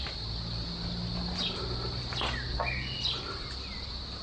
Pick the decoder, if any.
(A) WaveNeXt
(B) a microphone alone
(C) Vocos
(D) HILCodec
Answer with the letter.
B